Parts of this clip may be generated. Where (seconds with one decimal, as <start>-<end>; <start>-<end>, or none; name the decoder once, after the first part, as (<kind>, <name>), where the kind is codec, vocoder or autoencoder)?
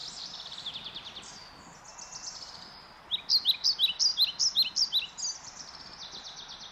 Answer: none